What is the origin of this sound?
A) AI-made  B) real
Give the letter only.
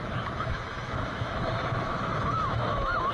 A